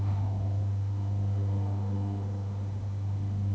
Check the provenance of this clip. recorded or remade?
remade